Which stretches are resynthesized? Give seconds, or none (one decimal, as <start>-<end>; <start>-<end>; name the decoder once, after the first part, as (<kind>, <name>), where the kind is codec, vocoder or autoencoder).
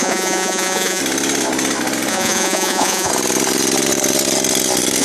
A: 0.0-1.0 (vocoder, Vocos); 2.1-3.1